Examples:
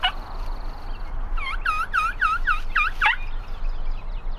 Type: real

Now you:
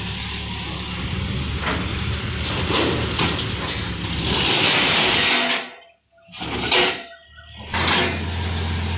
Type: real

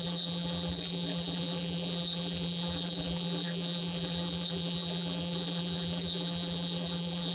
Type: fake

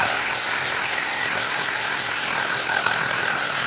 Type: fake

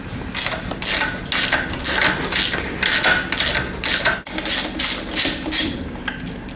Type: real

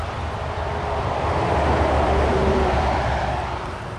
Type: fake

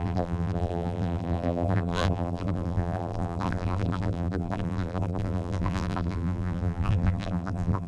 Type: fake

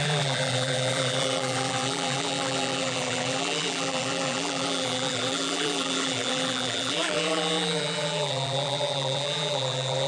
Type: fake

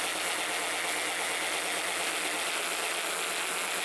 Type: real